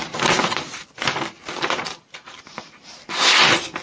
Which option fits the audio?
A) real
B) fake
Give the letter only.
A